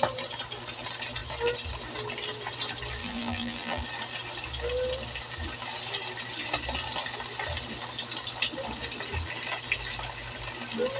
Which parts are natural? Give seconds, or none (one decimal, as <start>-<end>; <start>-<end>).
0.0-3.0; 3.8-11.0